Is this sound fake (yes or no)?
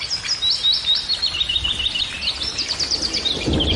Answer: no